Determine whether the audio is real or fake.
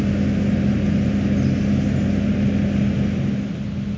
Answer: real